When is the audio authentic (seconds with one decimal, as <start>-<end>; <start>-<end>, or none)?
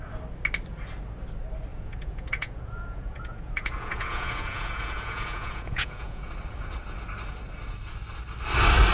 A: 0.0-1.7; 6.3-8.9